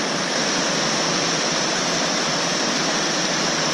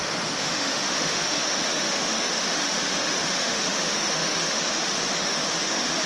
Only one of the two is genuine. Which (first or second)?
first